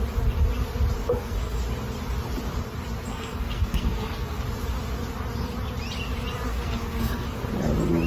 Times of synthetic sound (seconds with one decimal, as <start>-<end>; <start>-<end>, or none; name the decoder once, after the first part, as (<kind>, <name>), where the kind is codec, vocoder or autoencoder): 1.0-1.6 (codec, SNAC); 3.1-4.4; 6.5-7.5